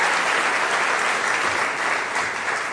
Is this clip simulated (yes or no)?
no